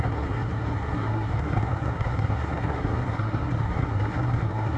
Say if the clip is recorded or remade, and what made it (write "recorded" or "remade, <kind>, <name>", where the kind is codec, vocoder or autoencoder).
remade, codec, SNAC